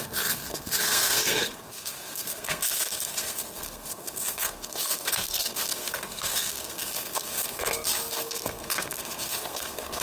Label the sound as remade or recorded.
remade